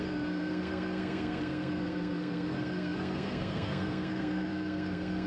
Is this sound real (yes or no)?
no